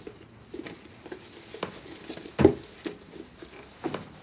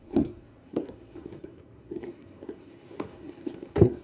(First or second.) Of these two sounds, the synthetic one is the second